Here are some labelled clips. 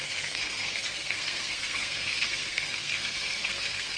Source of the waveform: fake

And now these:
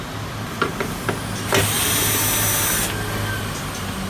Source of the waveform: real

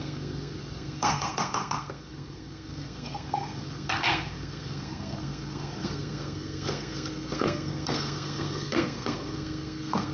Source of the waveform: fake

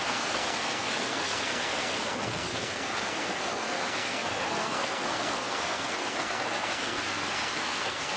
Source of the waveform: fake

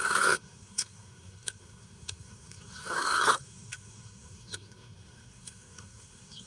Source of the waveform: fake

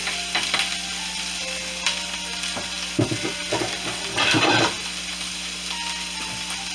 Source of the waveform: real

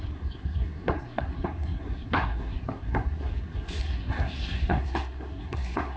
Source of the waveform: fake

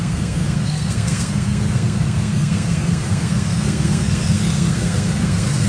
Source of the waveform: fake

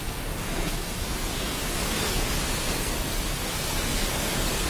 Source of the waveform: fake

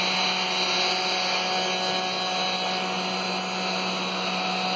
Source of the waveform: real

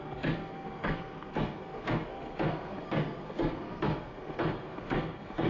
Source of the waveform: fake